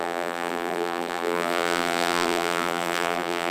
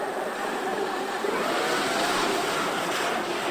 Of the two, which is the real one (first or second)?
second